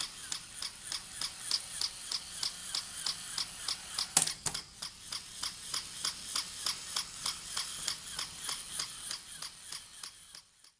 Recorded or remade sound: recorded